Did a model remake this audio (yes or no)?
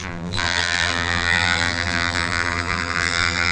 yes